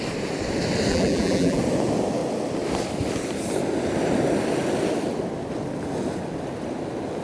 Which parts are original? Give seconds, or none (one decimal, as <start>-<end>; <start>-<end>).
0.0-0.9; 1.6-7.2